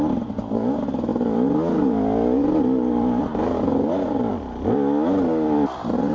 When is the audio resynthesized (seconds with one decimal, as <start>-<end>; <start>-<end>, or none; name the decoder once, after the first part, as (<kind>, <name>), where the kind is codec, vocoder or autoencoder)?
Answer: none